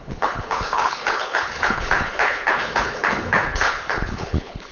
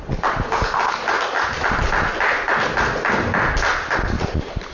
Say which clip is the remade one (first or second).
first